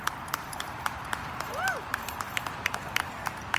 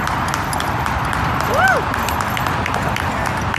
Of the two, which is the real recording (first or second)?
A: second